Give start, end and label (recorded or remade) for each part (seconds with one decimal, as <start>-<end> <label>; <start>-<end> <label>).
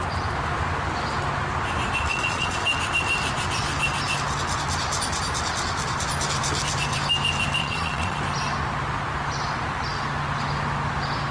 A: 0.0-2.1 recorded; 2.1-2.6 remade; 2.6-7.6 recorded; 7.6-8.2 remade; 8.2-11.3 recorded